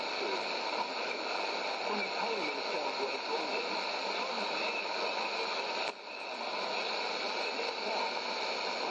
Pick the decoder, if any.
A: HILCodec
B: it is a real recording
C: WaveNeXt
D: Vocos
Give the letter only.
B